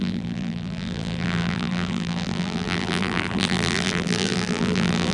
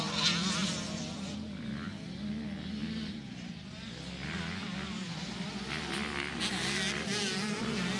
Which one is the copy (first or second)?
first